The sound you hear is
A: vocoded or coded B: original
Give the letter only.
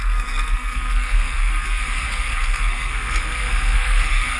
A